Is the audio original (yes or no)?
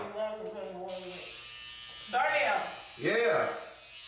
yes